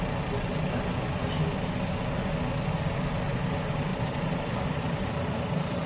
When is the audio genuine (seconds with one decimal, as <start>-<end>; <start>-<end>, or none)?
0.0-3.9